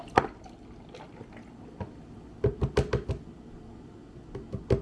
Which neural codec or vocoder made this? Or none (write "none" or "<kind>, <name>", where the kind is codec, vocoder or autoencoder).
none